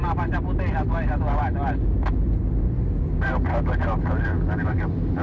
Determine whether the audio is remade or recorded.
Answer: recorded